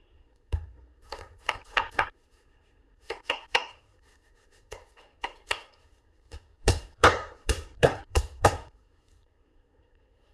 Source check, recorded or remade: remade